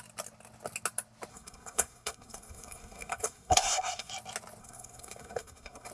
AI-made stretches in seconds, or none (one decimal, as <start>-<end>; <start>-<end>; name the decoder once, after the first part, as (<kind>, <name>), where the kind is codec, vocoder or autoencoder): 1.3-4.1 (codec, SNAC); 4.6-5.9

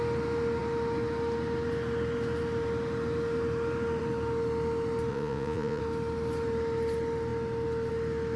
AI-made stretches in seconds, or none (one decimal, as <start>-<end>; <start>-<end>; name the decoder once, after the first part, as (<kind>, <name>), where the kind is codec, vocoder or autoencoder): 5.1-5.8 (vocoder, Vocos)

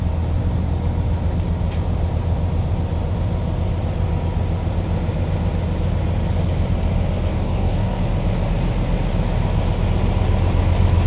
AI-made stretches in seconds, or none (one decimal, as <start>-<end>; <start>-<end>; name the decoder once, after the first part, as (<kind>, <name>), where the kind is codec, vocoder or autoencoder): 7.3-8.0 (codec, DAC)

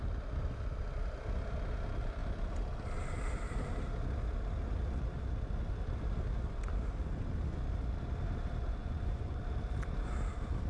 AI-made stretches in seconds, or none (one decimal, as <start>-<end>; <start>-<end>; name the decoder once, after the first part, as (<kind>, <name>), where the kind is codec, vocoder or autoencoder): 8.8-9.4 (vocoder, Vocos)